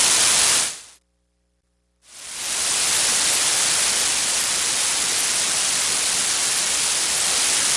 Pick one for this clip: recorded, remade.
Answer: recorded